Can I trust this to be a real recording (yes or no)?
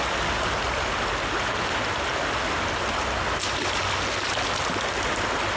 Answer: yes